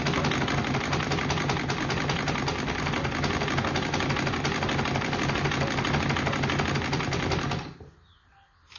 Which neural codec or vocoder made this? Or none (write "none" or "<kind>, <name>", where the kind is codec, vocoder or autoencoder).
none